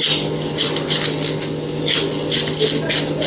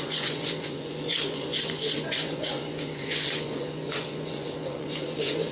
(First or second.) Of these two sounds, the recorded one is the first